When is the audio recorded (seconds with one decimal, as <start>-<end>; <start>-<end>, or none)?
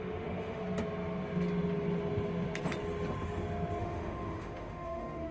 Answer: 0.6-3.8